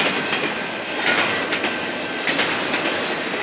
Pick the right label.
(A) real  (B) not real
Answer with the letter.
A